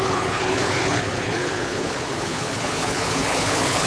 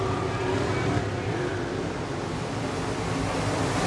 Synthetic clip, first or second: first